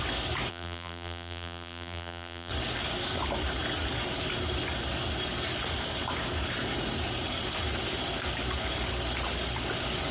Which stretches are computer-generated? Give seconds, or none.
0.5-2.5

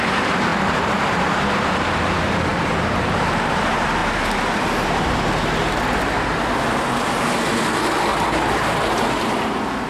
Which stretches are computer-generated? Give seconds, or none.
0.5-2.1; 2.5-3.6; 8.1-9.3